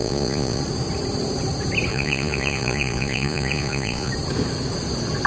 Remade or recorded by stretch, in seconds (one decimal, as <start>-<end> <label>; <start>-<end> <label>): 0.0-0.6 remade; 0.6-1.9 recorded; 1.9-4.1 remade; 4.1-5.3 recorded